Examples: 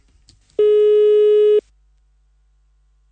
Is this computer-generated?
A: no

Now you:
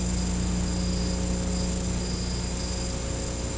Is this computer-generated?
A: no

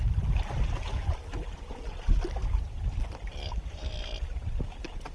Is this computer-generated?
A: no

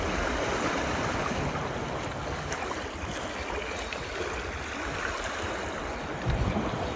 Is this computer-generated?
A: no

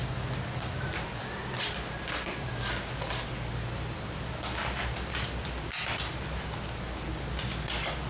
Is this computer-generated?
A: no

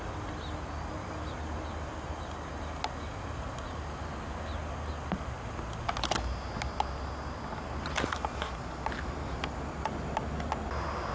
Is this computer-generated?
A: no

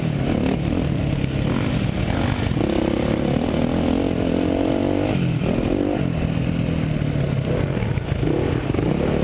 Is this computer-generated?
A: no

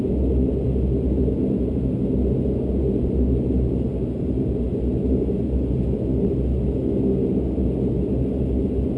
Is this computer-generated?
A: no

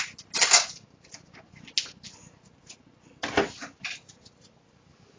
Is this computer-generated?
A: no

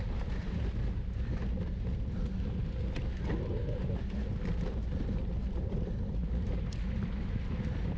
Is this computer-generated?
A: no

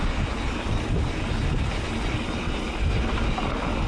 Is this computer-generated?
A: no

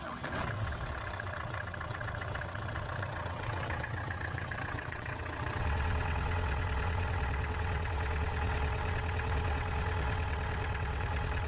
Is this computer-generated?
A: yes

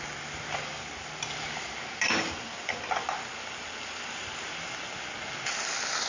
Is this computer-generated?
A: no